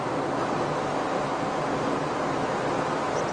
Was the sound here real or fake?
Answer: real